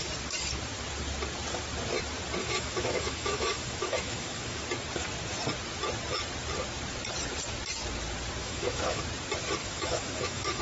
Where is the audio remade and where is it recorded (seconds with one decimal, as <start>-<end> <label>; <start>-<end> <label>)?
0.0-2.4 recorded; 2.4-4.6 remade; 4.6-8.4 recorded; 8.4-9.0 remade; 9.0-9.6 recorded; 9.6-10.6 remade